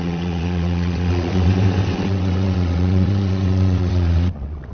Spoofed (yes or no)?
yes